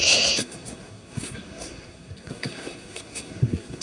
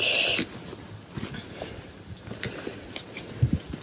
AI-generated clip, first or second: first